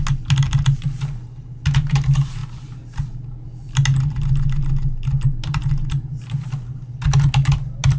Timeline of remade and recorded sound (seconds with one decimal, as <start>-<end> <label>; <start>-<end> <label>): 0.0-8.0 recorded